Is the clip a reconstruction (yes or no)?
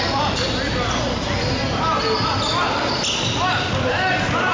no